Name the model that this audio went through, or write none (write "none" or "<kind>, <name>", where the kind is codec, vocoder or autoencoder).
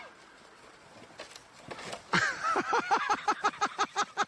none